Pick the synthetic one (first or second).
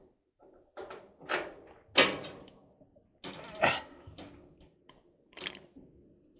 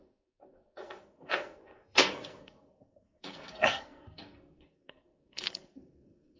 second